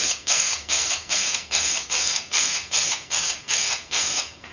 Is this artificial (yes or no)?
yes